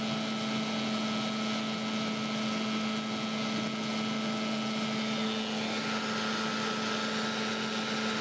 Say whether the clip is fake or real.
real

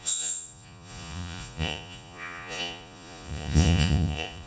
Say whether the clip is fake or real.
fake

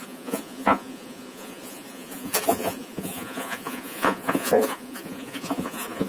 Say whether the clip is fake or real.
fake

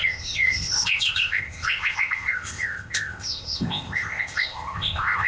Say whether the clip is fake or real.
fake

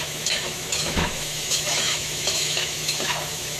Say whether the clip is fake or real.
fake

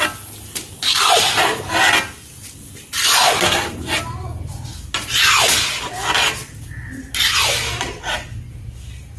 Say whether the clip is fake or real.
real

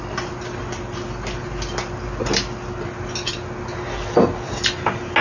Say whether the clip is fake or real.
real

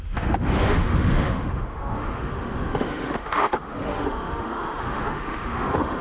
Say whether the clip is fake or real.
fake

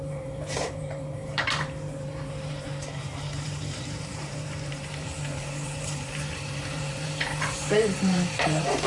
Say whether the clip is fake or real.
fake